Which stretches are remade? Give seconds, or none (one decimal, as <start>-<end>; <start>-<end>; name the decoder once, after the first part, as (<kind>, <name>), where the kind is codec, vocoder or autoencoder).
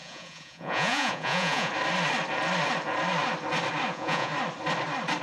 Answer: 0.0-1.7 (vocoder, Vocos); 3.9-4.3